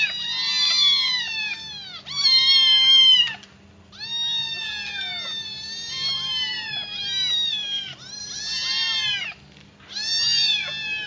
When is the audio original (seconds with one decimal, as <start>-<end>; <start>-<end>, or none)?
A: 0.0-11.1